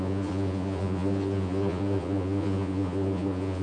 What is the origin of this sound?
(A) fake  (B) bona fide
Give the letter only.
A